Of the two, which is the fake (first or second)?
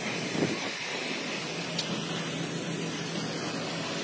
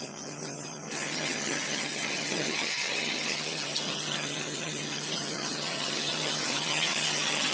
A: second